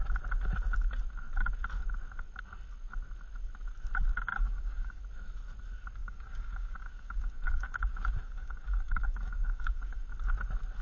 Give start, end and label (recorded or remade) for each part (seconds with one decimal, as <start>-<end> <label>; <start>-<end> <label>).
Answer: 0.0-4.3 recorded; 4.3-5.0 remade; 5.0-6.0 recorded; 6.0-10.1 remade; 10.1-10.8 recorded